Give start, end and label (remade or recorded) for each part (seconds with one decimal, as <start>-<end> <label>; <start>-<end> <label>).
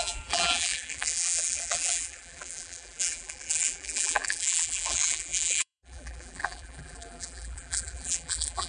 0.0-8.7 remade